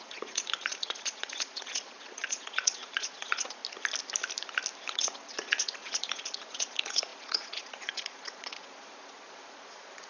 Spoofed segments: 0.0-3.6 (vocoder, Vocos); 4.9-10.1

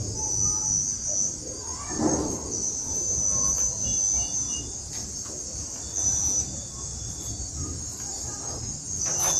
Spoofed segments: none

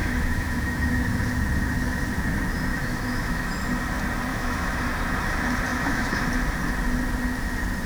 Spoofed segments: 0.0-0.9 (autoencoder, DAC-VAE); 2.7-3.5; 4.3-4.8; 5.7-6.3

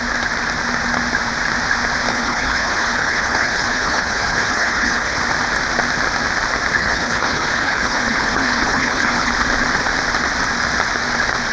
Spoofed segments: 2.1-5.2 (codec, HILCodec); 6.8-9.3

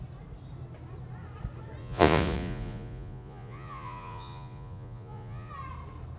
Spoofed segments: 1.8-5.5 (vocoder, Vocos)

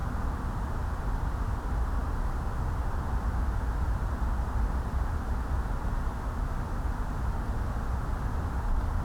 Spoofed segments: none

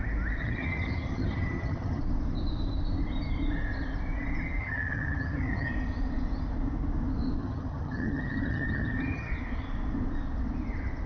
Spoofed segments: 0.4-2.0 (vocoder, HiFi-GAN); 4.6-5.7; 7.4-9.3

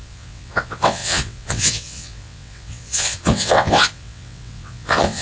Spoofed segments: 0.0-5.2 (vocoder, WaveNeXt)